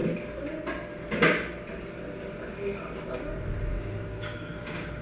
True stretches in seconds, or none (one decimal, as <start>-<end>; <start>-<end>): 0.0-3.7